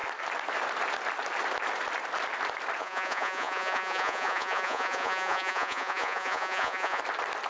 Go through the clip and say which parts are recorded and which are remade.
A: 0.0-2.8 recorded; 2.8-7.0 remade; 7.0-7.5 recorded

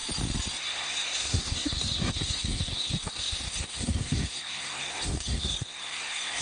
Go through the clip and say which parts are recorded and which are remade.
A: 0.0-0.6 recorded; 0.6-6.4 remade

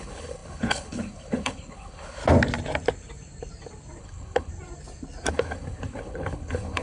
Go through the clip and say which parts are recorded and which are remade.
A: 0.0-2.2 remade; 2.2-4.0 recorded; 4.0-4.5 remade; 4.5-5.3 recorded; 5.3-6.8 remade